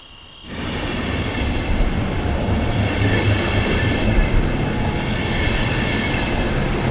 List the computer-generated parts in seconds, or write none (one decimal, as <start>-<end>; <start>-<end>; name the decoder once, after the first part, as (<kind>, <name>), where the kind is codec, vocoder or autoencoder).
0.0-4.2 (vocoder, BigVGAN v2)